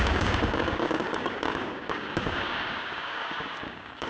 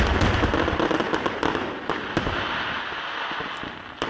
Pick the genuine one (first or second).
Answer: second